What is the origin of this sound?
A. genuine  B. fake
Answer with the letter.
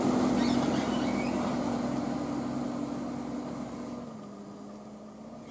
A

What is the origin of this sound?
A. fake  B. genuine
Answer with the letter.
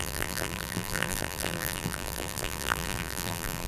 A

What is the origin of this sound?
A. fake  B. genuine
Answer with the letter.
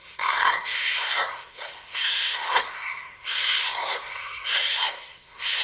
A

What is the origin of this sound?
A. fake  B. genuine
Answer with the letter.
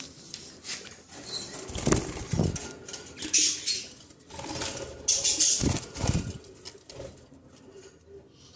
B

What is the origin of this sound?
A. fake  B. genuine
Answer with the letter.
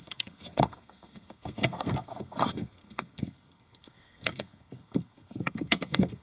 A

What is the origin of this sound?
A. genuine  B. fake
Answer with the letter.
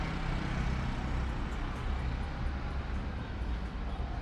A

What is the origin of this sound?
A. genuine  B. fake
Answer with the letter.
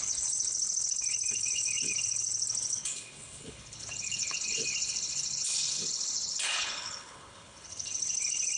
B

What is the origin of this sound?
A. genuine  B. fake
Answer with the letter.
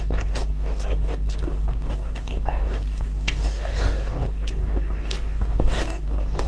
B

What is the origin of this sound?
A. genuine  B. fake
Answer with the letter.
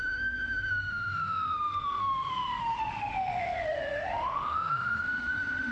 B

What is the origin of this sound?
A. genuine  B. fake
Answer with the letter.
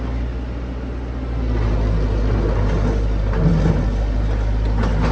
A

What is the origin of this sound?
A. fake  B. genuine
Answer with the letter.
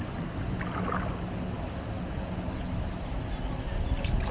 B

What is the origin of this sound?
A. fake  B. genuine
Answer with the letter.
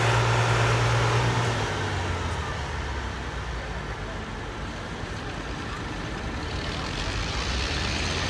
B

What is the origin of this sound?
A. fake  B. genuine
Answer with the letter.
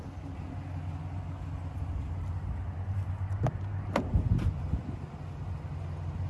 B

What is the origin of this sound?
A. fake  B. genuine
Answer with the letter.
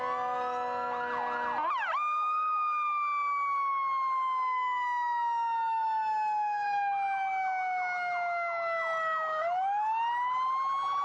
B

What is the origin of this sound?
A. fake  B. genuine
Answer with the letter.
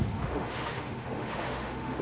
A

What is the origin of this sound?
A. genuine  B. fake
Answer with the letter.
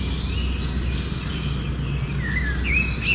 A